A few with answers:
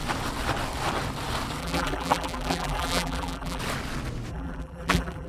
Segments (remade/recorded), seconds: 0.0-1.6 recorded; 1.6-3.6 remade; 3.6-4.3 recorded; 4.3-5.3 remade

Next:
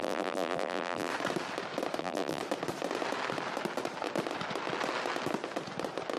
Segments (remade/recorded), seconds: 0.0-1.1 remade; 1.1-2.0 recorded; 2.0-2.4 remade; 2.4-6.2 recorded

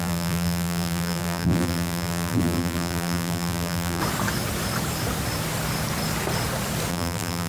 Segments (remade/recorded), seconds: 0.0-4.0 remade; 4.0-6.9 recorded; 6.9-7.5 remade

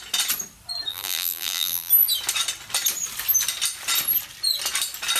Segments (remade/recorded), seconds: 0.0-0.9 recorded; 0.9-1.9 remade; 1.9-5.2 recorded

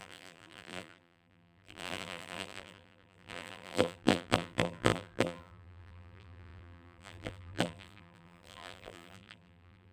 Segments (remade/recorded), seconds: 0.0-9.9 remade

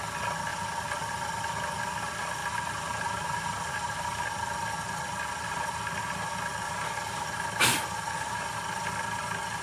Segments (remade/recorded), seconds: 0.0-2.4 recorded; 2.4-4.2 remade; 4.2-9.6 recorded